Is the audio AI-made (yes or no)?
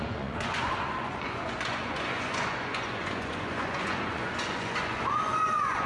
yes